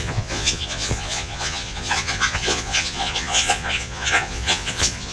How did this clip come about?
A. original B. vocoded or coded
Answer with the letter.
B